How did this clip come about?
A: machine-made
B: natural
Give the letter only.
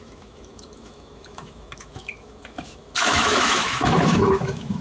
A